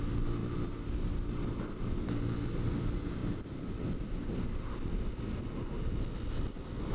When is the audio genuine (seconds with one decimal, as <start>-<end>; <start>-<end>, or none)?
0.0-6.9